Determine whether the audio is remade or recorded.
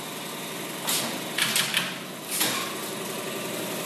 recorded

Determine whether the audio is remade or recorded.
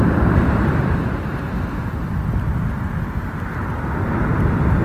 recorded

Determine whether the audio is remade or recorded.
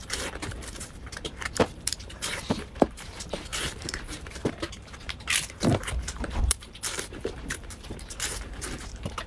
remade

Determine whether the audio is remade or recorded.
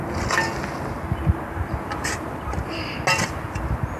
recorded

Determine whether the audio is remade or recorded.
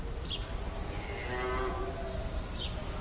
recorded